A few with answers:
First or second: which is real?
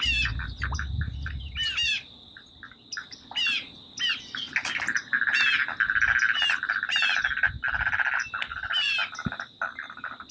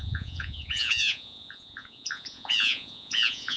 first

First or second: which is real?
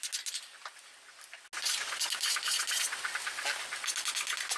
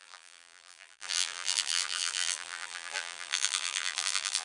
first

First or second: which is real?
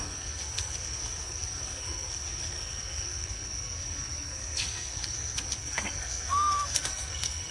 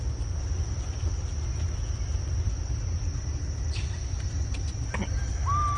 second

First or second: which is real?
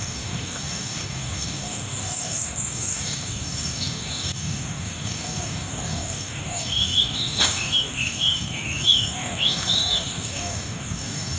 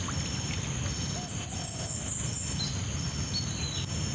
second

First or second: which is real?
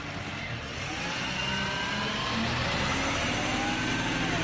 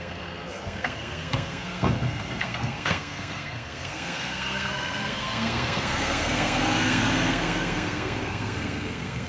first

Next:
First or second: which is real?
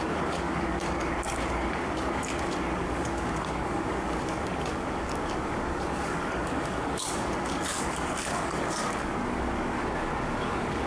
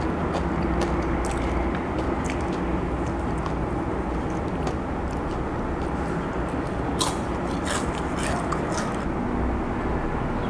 second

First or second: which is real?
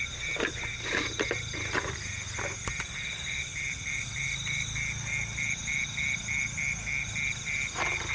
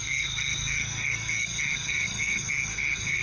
first